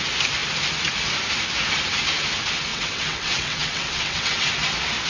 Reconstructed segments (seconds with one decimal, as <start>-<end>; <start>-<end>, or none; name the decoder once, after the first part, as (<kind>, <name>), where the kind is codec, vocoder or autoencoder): 2.7-4.5 (vocoder, WaveNeXt)